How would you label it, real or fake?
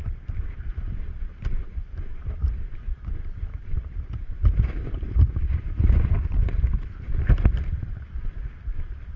fake